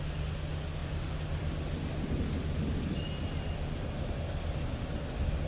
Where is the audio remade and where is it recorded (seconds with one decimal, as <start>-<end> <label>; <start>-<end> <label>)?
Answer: 0.0-5.5 recorded